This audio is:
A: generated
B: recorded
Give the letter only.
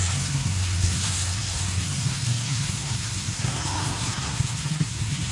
A